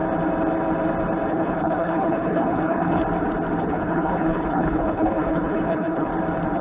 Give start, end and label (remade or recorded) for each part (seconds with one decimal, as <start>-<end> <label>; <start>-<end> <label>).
0.0-1.3 recorded; 1.3-3.0 remade; 3.0-3.6 recorded; 3.6-6.1 remade; 6.1-6.6 recorded